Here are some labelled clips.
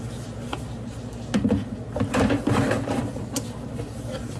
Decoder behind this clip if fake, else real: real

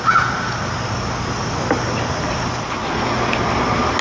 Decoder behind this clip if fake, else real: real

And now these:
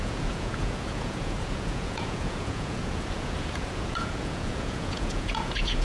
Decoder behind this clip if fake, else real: fake, vocoder, Vocos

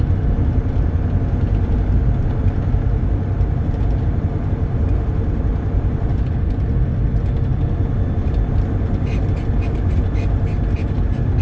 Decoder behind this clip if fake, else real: real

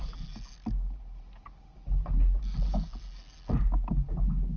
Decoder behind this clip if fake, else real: real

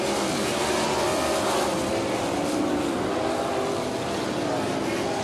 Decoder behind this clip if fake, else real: real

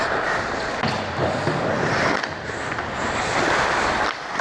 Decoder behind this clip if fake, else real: real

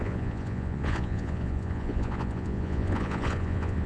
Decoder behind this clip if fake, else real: fake, vocoder, Vocos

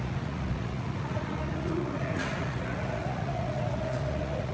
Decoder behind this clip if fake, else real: fake, vocoder, Vocos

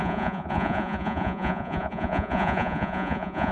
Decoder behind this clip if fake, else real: fake, vocoder, Vocos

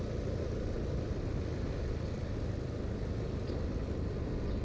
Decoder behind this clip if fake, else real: real